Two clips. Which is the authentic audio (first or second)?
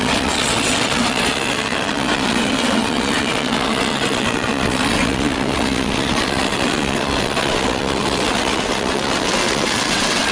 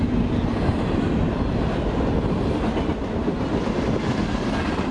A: second